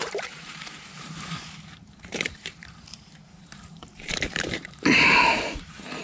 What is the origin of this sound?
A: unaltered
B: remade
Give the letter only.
B